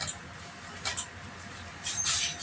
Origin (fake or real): fake